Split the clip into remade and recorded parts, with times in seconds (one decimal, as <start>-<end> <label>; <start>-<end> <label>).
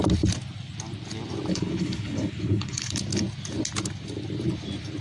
0.0-1.5 recorded; 1.5-3.0 remade; 3.0-5.0 recorded